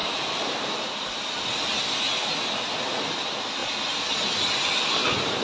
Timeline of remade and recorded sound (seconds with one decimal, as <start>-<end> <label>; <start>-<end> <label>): 0.0-1.6 remade; 1.6-5.4 recorded